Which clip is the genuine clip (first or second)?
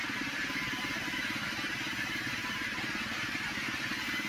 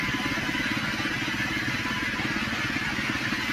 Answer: second